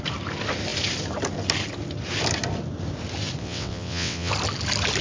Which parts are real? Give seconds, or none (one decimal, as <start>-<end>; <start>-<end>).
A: 0.0-3.4; 4.3-5.0

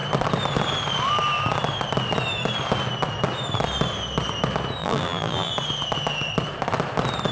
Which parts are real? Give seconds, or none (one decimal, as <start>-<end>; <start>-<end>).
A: 0.0-4.8; 5.5-7.3

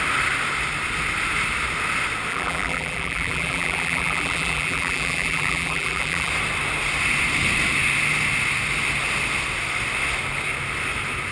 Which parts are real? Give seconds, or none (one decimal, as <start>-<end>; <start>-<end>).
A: 0.0-2.3; 6.3-11.3

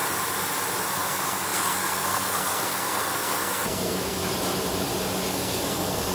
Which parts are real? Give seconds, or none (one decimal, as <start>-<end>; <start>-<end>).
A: 0.0-0.9; 4.2-5.3

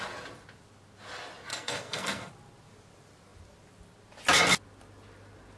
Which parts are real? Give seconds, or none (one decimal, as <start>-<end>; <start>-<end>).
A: 0.0-1.5; 2.3-5.6

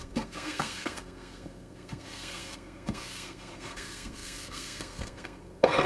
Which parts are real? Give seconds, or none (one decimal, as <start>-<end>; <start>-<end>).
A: none